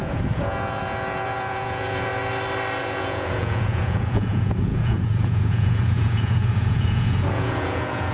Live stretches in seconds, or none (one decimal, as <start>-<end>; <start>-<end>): 2.1-2.8